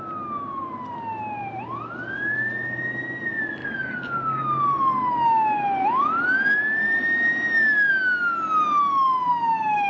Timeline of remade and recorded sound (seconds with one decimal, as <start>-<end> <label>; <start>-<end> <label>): 0.0-0.6 recorded; 0.6-2.1 remade; 2.1-9.9 recorded